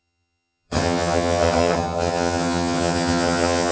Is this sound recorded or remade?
remade